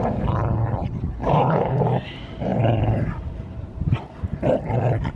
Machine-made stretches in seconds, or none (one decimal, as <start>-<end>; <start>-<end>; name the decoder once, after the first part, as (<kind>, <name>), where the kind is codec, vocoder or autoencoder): 1.2-1.8 (codec, HILCodec)